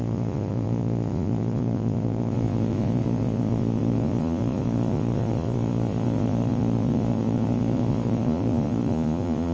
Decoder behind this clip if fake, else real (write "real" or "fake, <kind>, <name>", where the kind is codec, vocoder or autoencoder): fake, vocoder, Vocos